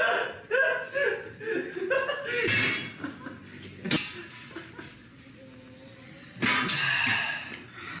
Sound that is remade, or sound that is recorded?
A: recorded